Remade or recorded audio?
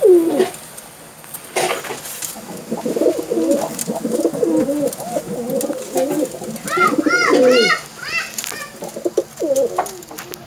recorded